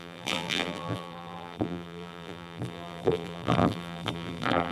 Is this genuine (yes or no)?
no